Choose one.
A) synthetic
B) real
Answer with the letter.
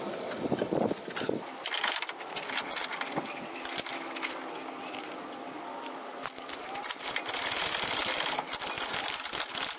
B